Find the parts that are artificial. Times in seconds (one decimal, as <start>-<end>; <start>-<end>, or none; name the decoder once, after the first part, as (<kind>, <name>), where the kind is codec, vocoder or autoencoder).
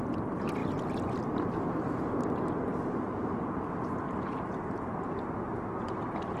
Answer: none